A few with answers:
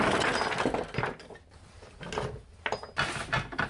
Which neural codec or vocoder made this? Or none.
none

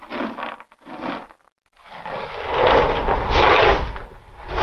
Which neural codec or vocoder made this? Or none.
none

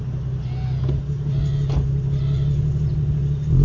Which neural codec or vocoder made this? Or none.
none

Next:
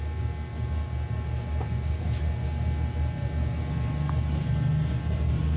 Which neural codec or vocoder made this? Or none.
none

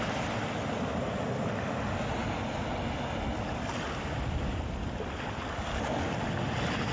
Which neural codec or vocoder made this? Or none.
none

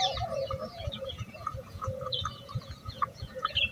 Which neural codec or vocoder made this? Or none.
vocoder, Vocos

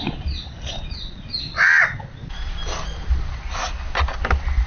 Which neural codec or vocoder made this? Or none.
none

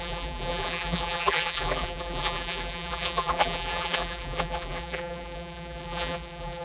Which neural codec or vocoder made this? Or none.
vocoder, BigVGAN v2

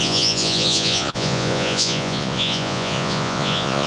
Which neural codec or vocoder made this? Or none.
vocoder, Vocos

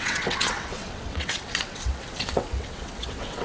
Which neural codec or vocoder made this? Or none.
vocoder, WaveNeXt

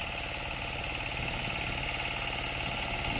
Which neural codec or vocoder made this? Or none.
none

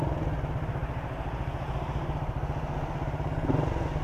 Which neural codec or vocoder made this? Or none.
none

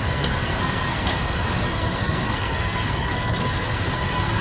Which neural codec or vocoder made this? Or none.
codec, SNAC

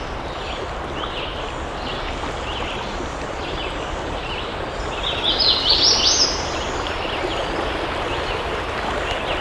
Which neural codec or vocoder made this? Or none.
none